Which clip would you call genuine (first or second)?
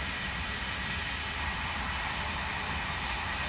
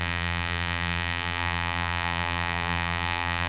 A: first